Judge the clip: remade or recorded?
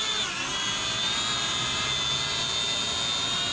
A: recorded